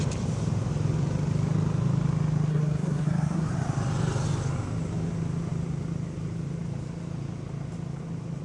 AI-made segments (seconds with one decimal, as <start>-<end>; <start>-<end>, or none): 2.5-3.5